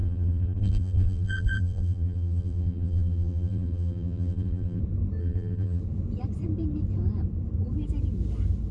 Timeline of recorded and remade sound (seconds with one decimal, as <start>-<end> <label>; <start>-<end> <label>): 0.0-4.8 remade; 4.8-5.2 recorded; 5.2-5.8 remade; 5.8-8.7 recorded

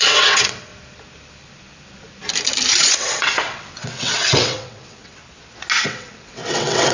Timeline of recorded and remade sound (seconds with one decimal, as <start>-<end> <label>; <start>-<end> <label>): 0.0-0.7 remade; 0.7-2.8 recorded; 2.8-5.2 remade; 5.2-5.8 recorded; 5.8-6.9 remade

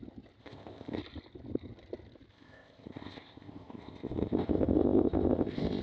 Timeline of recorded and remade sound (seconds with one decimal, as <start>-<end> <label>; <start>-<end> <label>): 0.0-0.4 recorded; 0.4-1.0 remade; 1.0-2.3 recorded; 2.3-5.8 remade

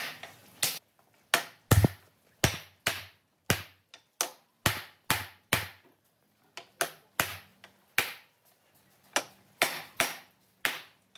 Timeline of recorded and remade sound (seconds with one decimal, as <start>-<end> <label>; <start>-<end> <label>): 0.0-11.2 recorded

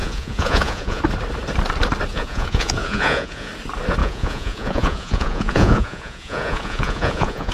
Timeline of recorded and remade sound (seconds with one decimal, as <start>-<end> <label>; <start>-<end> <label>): 0.0-1.0 remade; 1.0-2.1 recorded; 2.1-3.5 remade; 3.5-4.0 recorded; 4.0-7.5 remade

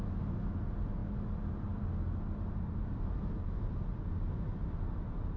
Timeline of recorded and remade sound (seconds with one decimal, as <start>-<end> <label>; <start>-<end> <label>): 0.0-5.4 recorded

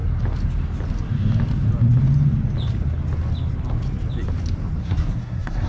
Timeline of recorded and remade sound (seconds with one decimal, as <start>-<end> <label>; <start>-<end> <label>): 0.0-4.8 recorded; 4.8-5.7 remade